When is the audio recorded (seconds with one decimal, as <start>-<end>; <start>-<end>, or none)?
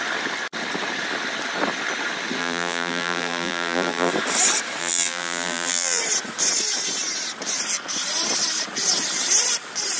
0.0-2.4; 4.1-4.8; 6.0-10.0